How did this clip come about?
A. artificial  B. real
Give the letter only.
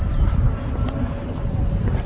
B